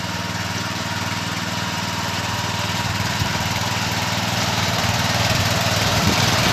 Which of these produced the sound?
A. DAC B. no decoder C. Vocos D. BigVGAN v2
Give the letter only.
D